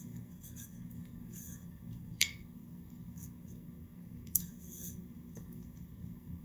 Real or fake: fake